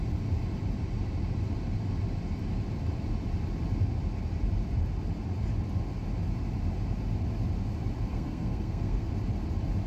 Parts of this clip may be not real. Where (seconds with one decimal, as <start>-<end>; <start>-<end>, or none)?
8.1-9.1

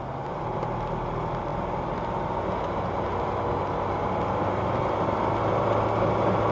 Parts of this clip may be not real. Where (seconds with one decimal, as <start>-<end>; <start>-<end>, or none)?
none